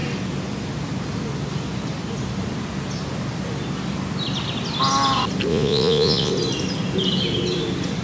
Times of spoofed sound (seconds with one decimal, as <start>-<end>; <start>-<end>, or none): 5.5-6.3